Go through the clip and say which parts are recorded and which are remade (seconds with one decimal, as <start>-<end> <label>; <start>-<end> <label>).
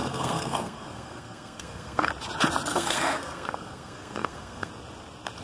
0.0-2.1 remade; 2.1-2.7 recorded; 2.7-4.7 remade; 4.7-5.4 recorded